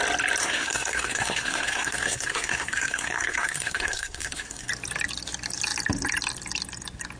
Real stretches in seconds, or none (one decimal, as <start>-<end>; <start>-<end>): 0.0-0.4; 4.7-7.2

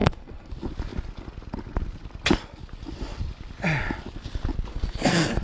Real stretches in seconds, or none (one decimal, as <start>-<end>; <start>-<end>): 0.5-4.7

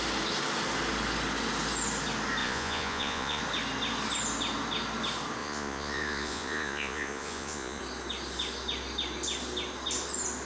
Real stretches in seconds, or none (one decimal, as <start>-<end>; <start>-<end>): 0.0-2.4; 3.4-5.4; 7.8-10.5

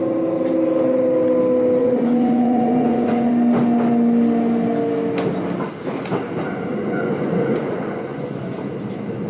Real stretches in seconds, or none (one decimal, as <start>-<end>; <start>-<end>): 0.0-1.8; 3.3-6.7; 8.4-9.3

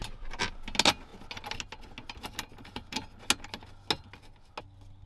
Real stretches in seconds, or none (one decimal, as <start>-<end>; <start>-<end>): 0.0-5.1

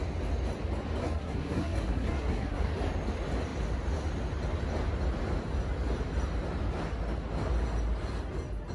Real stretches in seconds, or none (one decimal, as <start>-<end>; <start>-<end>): 0.0-1.0; 2.7-8.7